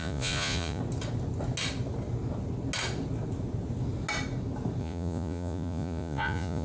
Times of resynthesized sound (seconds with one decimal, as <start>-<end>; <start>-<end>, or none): 0.0-0.8; 4.8-6.6